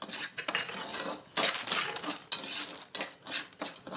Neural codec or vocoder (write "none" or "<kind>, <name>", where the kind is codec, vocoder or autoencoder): none